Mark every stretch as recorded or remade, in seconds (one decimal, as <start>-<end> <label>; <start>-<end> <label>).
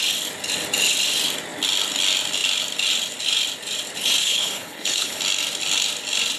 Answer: 0.0-4.2 recorded; 4.2-5.2 remade; 5.2-6.4 recorded